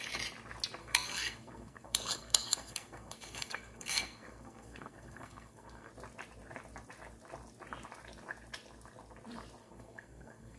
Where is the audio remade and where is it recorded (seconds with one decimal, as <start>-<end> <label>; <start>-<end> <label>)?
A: 0.0-0.8 recorded; 0.8-5.9 remade; 5.9-9.6 recorded; 9.6-10.6 remade